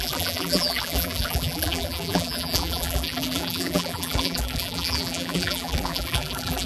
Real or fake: fake